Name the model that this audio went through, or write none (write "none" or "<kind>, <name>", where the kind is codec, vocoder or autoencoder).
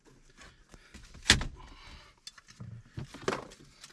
none